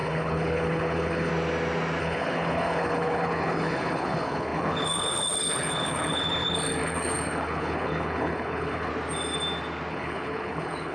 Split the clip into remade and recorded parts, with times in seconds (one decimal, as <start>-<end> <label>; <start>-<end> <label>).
0.0-1.3 remade; 1.3-2.0 recorded; 2.0-8.9 remade; 8.9-9.9 recorded; 9.9-10.9 remade